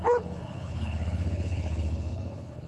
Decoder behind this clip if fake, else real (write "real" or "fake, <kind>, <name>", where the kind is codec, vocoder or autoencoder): fake, codec, HILCodec